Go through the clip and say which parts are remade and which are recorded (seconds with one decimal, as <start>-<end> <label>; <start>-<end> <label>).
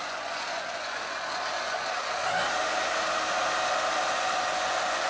0.0-2.2 remade; 2.2-4.1 recorded; 4.1-5.1 remade